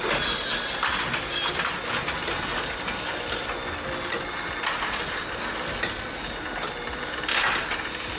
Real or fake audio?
real